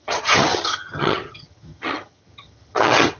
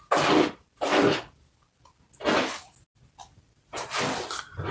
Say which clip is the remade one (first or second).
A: first